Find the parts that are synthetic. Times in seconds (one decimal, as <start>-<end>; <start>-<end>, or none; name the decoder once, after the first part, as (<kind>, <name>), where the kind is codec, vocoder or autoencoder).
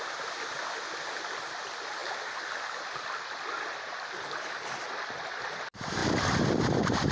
none